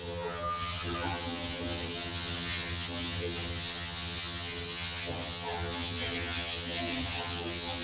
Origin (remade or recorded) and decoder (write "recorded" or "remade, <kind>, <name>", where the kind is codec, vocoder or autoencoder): remade, vocoder, HiFi-GAN